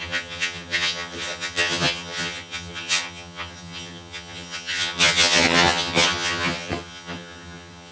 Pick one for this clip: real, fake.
fake